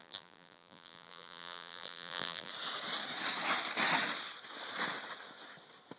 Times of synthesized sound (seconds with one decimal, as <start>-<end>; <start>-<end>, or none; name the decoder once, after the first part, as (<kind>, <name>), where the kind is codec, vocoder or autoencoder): 0.0-2.5 (vocoder, BigVGAN v2)